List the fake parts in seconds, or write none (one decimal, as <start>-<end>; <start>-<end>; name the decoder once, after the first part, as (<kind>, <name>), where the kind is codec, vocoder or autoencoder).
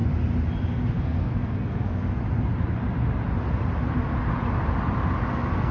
1.0-2.2 (codec, SNAC); 5.3-5.7